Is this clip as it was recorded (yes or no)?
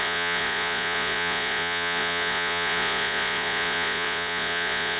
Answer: no